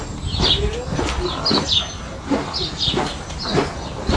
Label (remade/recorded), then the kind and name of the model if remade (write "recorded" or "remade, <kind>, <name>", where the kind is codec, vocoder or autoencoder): recorded